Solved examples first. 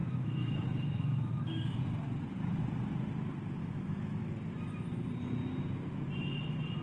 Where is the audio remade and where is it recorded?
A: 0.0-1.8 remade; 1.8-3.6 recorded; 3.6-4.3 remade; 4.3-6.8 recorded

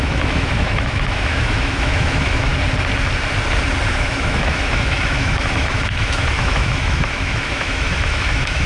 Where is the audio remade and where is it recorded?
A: 0.0-2.5 remade; 2.5-3.9 recorded; 3.9-8.7 remade

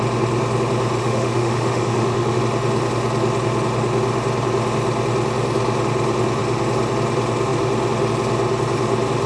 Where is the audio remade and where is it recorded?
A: 0.0-1.0 recorded; 1.0-2.4 remade; 2.4-9.3 recorded